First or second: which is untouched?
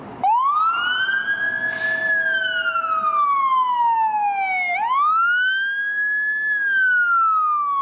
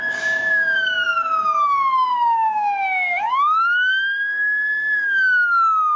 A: first